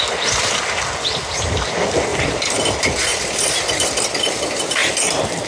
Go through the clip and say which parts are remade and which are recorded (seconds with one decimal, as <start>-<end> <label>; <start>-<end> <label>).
0.0-2.1 recorded; 2.1-4.0 remade; 4.0-5.5 recorded